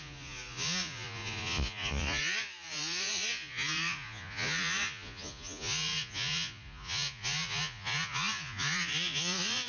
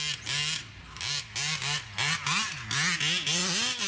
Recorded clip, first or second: second